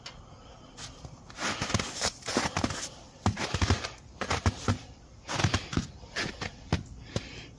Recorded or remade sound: recorded